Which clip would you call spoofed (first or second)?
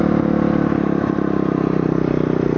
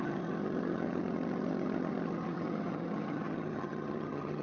second